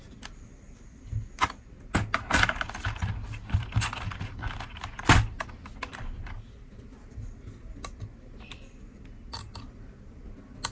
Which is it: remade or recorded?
recorded